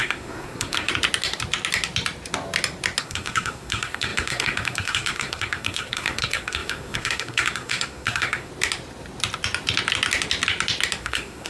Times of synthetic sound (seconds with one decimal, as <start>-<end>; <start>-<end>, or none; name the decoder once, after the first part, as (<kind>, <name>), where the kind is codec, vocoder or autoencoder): 0.0-0.9 (codec, SNAC); 3.0-8.5; 11.0-11.5